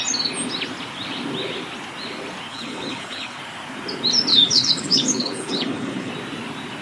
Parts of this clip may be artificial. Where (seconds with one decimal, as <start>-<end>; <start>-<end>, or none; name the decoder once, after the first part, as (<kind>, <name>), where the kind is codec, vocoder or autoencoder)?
2.5-3.4 (codec, HILCodec); 4.3-6.1